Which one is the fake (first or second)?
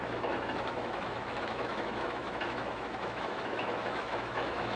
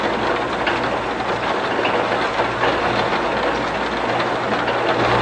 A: first